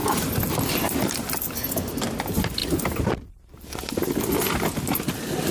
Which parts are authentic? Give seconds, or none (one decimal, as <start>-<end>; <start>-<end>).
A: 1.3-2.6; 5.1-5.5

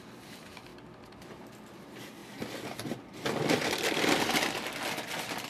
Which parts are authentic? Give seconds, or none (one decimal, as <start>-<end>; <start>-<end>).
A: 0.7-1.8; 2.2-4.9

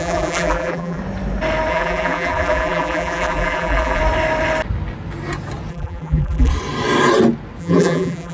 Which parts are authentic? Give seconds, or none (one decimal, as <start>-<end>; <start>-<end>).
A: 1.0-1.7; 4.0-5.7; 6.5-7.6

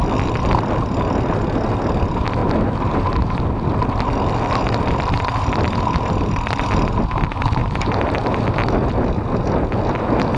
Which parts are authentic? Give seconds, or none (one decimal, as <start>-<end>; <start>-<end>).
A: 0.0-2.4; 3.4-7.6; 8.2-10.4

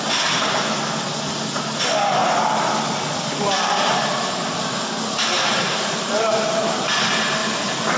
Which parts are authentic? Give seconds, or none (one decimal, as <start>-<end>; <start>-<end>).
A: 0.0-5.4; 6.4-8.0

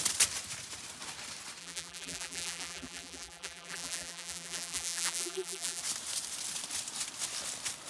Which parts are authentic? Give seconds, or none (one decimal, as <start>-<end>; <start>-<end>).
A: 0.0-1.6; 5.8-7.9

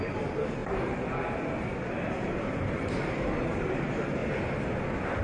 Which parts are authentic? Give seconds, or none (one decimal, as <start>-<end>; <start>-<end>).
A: 0.6-2.0; 4.2-5.2

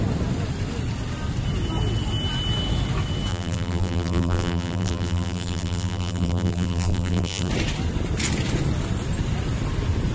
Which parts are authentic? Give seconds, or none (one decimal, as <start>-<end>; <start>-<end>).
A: 0.0-3.3; 7.5-10.1